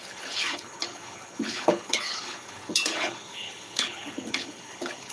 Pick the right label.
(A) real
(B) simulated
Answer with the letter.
B